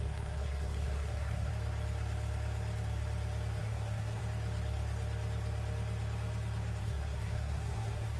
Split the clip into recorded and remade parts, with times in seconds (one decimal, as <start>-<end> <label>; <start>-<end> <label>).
0.0-1.5 remade; 1.5-3.6 recorded; 3.6-4.2 remade; 4.2-6.8 recorded; 6.8-8.2 remade